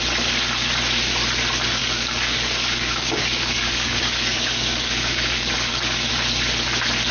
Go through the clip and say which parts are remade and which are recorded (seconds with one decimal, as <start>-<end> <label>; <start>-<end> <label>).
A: 0.0-1.8 recorded; 1.8-6.1 remade; 6.1-7.1 recorded

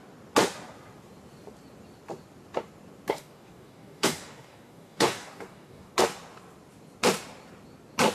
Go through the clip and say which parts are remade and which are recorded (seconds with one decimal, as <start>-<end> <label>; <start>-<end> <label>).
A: 0.0-3.1 recorded; 3.1-5.9 remade; 5.9-8.1 recorded

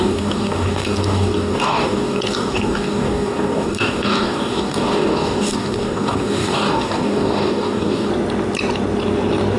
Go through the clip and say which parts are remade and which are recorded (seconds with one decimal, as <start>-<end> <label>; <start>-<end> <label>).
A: 0.0-8.1 remade; 8.1-9.6 recorded

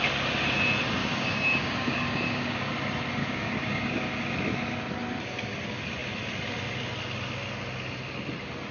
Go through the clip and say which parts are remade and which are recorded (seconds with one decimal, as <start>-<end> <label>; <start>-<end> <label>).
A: 0.0-1.0 recorded; 1.0-2.7 remade; 2.7-3.2 recorded; 3.2-4.3 remade; 4.3-8.7 recorded